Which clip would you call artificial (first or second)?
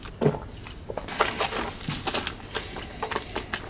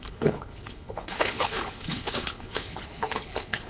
second